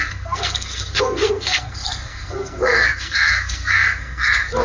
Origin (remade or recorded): remade